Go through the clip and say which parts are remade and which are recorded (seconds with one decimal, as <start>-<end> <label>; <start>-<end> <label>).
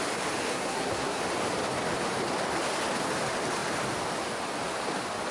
0.0-0.5 recorded; 0.5-1.2 remade; 1.2-5.3 recorded